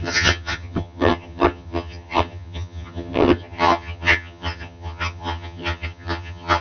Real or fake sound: fake